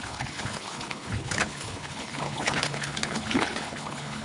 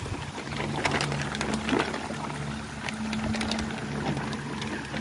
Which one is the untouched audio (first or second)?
second